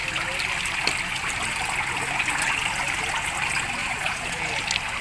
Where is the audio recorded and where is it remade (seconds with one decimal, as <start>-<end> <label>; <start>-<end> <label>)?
0.0-3.8 recorded; 3.8-4.4 remade; 4.4-5.0 recorded